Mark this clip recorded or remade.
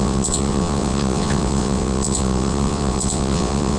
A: remade